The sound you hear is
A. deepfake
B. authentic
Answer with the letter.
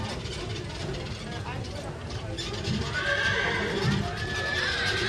B